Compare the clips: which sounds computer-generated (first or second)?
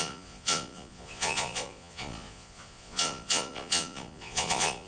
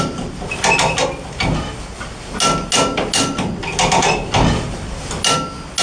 first